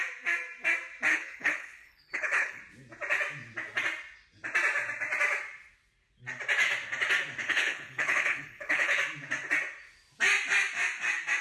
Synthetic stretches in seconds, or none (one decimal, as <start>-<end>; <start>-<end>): 1.1-2.6; 7.4-9.0